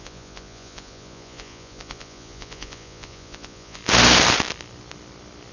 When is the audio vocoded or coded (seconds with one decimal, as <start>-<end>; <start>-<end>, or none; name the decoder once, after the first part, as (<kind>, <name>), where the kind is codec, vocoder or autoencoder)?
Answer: 0.0-3.8 (vocoder, Vocos)